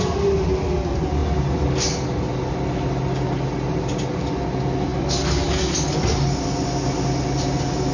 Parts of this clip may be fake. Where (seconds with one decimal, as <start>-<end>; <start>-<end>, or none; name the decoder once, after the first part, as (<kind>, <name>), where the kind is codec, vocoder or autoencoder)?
none